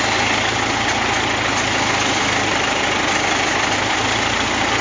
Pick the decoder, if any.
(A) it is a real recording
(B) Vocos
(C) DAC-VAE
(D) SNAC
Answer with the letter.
A